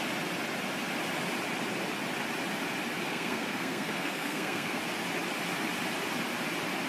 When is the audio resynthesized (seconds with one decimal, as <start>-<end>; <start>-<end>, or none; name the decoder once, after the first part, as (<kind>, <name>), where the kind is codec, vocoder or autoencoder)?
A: 3.1-4.8 (codec, SNAC)